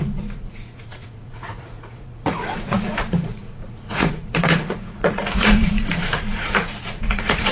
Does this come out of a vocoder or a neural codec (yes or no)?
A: yes